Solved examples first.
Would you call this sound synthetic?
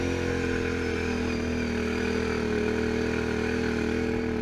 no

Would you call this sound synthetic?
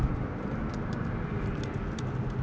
no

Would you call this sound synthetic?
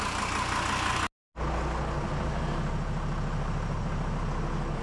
no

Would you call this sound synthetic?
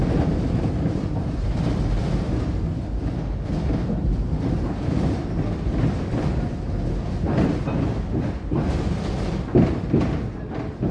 no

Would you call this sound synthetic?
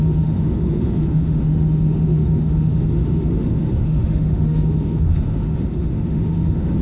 yes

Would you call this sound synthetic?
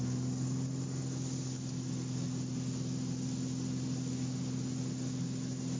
no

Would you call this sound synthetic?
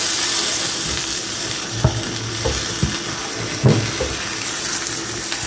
no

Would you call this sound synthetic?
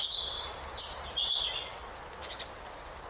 no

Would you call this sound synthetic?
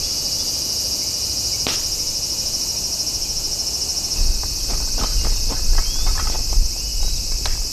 no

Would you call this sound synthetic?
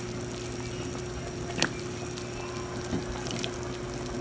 no